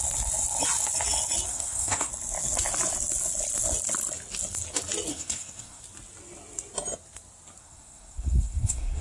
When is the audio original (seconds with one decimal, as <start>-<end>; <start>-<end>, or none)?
0.0-1.5; 2.1-5.1; 5.8-7.6